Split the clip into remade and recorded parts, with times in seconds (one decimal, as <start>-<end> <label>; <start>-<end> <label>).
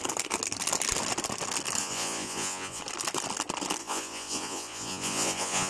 0.0-1.8 recorded; 1.8-2.8 remade; 2.8-3.8 recorded; 3.8-5.7 remade